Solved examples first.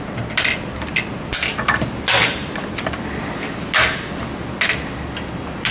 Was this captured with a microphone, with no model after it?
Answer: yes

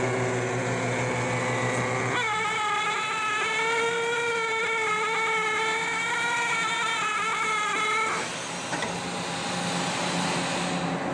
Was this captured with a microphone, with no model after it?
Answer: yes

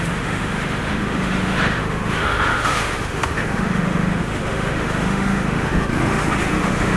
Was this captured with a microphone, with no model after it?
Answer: no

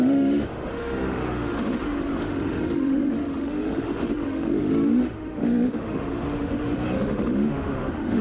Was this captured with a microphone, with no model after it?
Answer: no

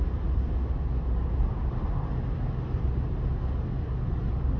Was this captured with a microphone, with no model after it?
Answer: yes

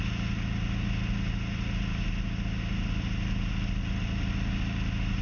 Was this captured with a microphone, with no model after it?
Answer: yes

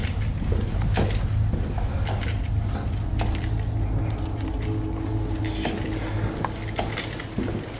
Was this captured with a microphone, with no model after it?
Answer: yes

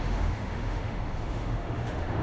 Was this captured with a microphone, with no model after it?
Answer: no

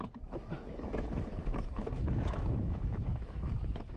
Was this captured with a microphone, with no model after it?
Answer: no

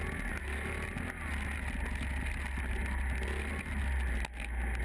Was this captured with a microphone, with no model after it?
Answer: yes